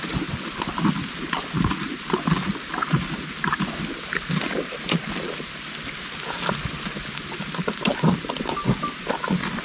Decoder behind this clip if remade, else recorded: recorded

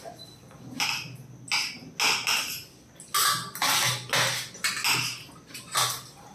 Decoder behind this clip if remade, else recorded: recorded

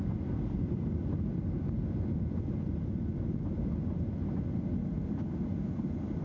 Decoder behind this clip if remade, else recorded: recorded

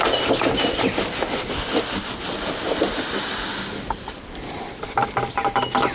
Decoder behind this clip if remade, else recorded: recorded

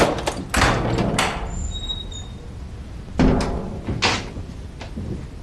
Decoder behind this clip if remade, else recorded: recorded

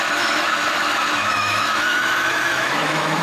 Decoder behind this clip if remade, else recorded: remade, autoencoder, DAC-VAE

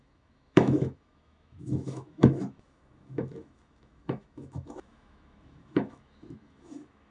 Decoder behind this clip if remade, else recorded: remade, autoencoder, DAC-VAE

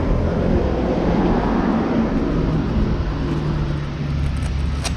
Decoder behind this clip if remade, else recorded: recorded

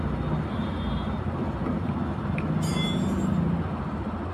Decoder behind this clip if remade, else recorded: recorded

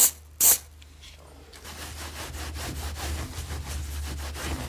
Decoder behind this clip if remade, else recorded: recorded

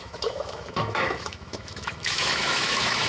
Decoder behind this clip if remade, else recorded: remade, autoencoder, DAC-VAE